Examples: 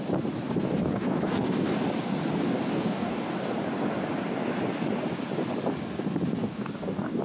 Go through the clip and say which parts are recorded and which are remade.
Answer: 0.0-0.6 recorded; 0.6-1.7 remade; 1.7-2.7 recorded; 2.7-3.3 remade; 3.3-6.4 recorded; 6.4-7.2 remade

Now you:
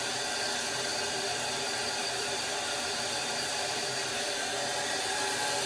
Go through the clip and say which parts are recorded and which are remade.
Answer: 0.0-0.9 recorded; 0.9-4.3 remade; 4.3-5.7 recorded

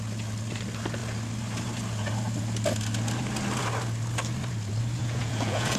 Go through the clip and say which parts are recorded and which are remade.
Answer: 0.0-5.0 recorded; 5.0-5.8 remade

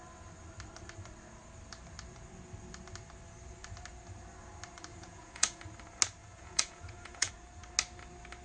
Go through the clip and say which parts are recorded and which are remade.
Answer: 0.0-4.9 recorded; 4.9-5.6 remade; 5.6-6.2 recorded; 6.2-7.3 remade; 7.3-8.4 recorded

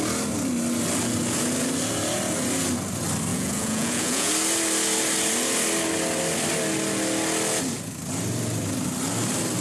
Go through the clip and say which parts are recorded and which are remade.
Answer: 0.0-3.3 recorded; 3.3-4.3 remade; 4.3-9.6 recorded

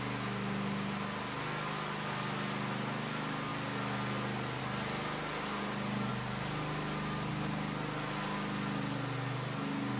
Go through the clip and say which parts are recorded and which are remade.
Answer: 0.0-10.0 recorded